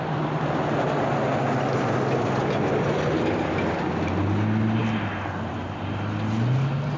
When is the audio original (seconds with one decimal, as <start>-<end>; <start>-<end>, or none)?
0.0-7.0